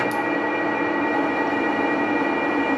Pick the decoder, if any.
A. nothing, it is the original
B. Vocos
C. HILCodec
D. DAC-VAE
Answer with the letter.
A